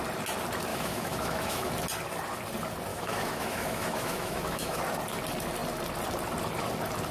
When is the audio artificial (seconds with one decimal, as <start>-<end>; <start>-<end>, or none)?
0.7-1.7; 2.9-4.8